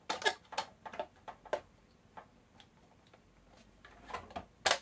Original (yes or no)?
yes